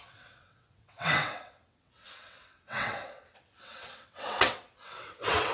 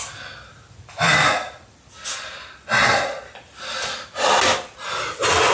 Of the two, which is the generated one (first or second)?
first